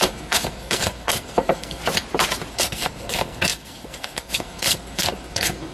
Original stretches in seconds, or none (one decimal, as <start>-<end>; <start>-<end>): 1.8-2.5